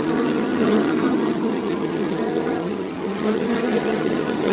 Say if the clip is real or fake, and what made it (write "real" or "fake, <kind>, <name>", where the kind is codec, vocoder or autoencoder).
fake, vocoder, HiFi-GAN